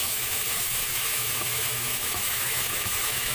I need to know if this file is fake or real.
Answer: fake